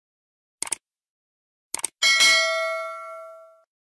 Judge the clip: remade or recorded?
recorded